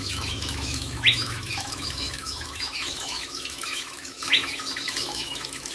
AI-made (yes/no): yes